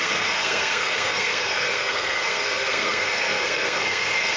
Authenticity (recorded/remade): remade